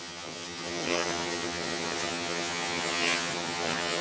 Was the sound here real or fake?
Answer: fake